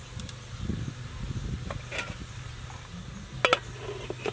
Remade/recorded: recorded